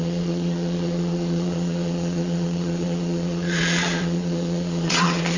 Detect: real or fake fake